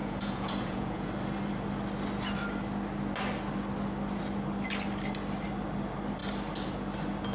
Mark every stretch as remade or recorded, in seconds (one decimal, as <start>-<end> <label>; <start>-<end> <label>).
0.0-1.1 remade; 1.1-7.3 recorded